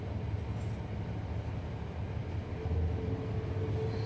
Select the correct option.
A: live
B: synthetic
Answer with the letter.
A